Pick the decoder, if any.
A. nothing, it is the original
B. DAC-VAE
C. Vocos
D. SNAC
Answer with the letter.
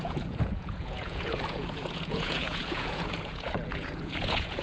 C